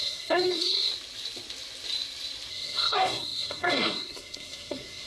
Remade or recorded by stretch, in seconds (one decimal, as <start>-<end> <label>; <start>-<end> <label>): 0.0-0.9 remade; 0.9-2.5 recorded; 2.5-5.1 remade